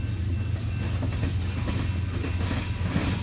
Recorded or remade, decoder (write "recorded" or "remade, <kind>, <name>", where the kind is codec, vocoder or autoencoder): recorded